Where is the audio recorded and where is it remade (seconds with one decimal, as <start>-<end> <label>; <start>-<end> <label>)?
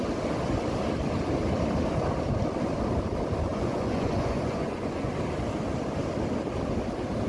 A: 0.0-3.5 recorded; 3.5-5.1 remade; 5.1-7.3 recorded